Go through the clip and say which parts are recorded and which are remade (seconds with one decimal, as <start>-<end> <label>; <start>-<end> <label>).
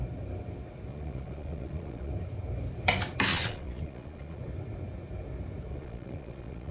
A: 0.0-0.9 recorded; 0.9-2.1 remade; 2.1-3.3 recorded; 3.3-4.4 remade; 4.4-5.7 recorded; 5.7-6.7 remade